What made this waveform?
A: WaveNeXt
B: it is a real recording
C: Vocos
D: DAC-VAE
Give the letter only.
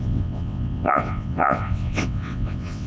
A